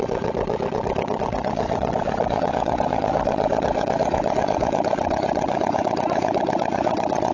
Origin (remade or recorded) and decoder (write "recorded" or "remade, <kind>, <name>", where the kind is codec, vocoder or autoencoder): remade, vocoder, WaveNeXt